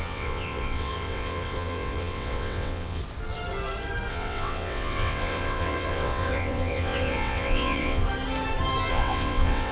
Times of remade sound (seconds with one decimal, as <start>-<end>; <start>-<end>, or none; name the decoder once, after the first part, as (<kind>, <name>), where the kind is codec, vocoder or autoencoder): 0.0-3.0 (vocoder, WaveNeXt); 4.1-8.0; 8.9-9.7